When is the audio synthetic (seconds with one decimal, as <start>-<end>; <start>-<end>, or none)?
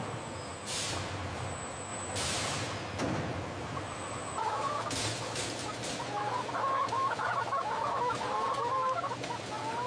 none